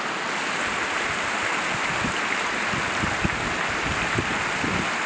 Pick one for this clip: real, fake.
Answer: real